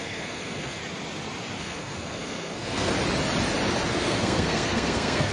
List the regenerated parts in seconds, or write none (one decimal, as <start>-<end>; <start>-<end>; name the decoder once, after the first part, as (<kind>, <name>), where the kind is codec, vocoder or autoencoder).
0.0-0.8 (codec, SNAC); 1.6-2.9; 3.9-5.3